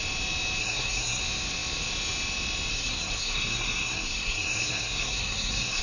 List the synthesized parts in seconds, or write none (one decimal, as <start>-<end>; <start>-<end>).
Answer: 0.6-1.2; 2.7-5.8